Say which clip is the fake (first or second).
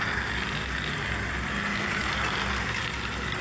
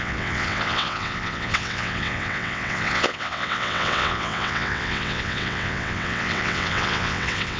second